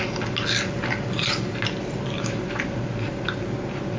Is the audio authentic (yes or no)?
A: yes